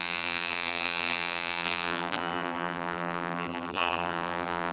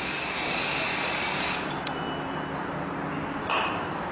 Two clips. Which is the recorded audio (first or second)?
second